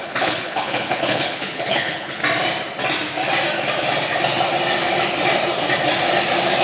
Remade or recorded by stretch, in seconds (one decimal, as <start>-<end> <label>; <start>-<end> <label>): 0.0-2.2 remade; 2.2-6.6 recorded